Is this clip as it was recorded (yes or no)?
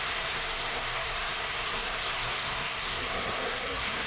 no